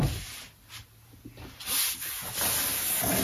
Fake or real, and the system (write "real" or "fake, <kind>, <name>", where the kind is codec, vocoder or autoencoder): real